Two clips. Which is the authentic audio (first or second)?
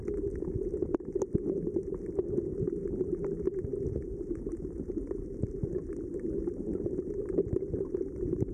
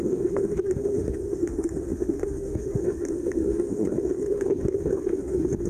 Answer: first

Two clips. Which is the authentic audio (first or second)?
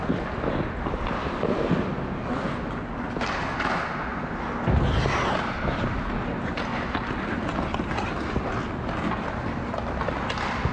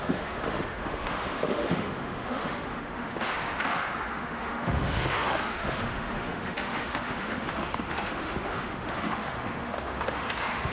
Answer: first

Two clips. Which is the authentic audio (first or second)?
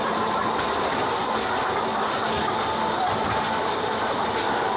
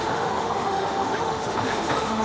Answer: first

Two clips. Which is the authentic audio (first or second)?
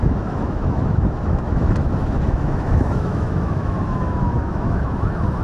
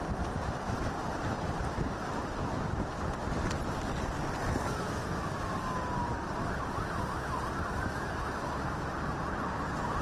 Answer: second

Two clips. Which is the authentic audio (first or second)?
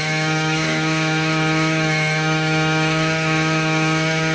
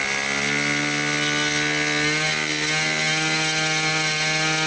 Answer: second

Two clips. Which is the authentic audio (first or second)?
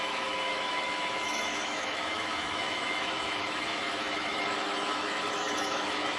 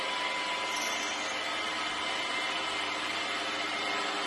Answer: second